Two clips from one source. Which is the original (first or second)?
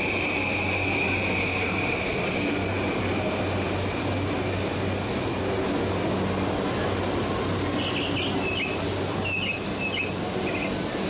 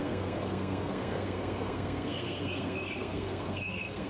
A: first